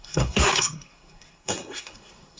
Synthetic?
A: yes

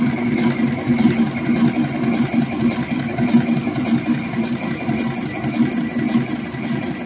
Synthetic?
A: no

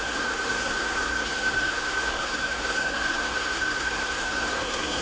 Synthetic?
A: yes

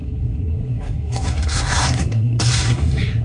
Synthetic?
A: yes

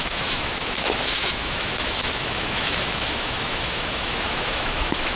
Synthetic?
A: yes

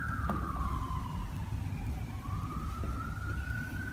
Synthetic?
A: no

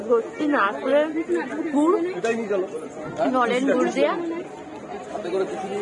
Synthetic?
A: no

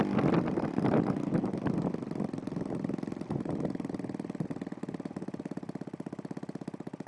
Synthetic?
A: no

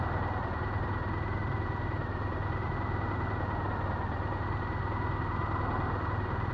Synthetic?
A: no